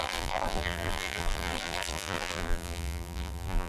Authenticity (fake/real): fake